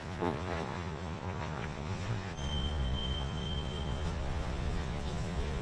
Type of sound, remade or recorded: remade